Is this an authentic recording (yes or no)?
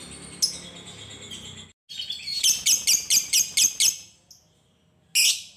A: yes